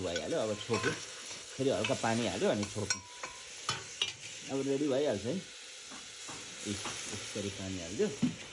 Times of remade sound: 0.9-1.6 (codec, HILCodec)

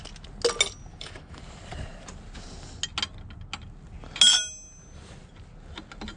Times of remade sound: 0.9-1.4 (autoencoder, DAC-VAE)

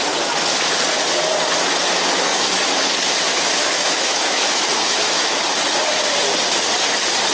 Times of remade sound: 2.3-2.9 (autoencoder, DAC-VAE); 3.3-5.3